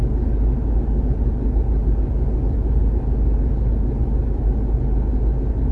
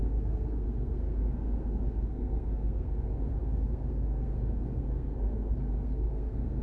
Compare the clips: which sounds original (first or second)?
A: first